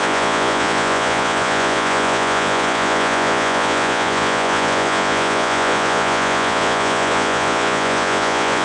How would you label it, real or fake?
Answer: fake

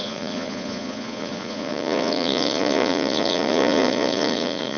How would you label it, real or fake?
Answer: fake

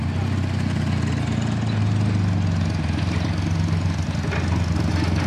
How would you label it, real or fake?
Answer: real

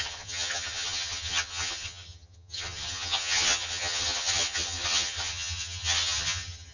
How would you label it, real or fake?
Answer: fake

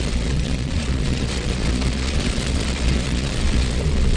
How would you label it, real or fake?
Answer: fake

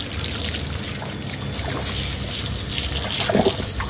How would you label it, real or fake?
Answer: real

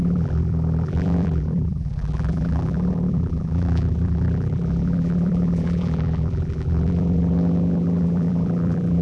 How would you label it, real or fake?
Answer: fake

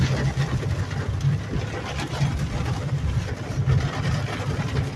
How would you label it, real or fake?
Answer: real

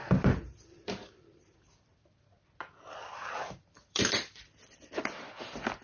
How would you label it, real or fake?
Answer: fake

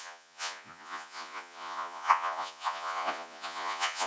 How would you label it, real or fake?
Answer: fake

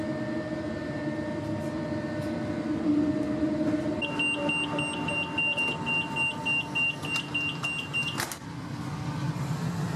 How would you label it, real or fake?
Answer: real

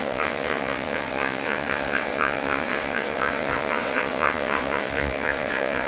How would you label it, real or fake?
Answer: fake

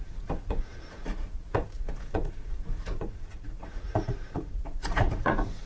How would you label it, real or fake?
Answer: fake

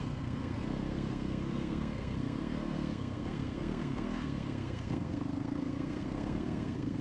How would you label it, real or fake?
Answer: fake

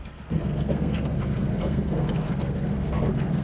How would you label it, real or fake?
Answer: fake